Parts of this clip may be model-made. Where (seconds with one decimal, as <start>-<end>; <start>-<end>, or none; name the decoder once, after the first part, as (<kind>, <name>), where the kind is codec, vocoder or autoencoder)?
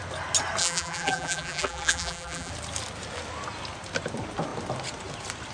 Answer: 0.6-2.5 (vocoder, BigVGAN v2)